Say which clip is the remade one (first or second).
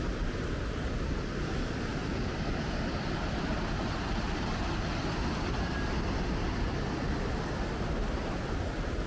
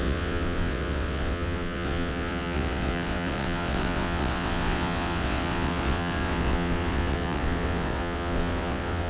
second